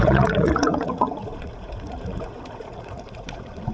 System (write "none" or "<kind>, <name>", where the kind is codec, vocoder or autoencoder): vocoder, Vocos